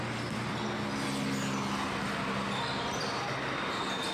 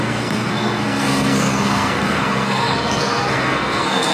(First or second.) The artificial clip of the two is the second